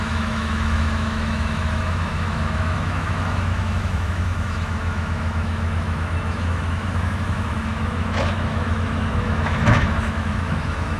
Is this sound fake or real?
fake